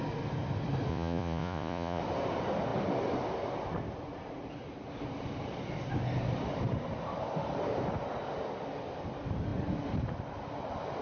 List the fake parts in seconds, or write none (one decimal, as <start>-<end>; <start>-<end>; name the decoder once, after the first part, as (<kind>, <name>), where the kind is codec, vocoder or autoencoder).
0.9-2.0 (vocoder, Vocos)